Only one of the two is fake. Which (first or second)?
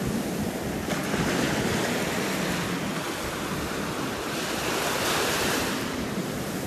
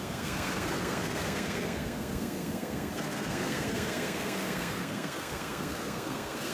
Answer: second